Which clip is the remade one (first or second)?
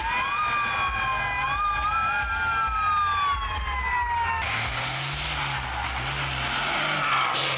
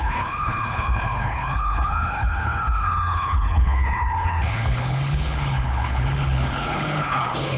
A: second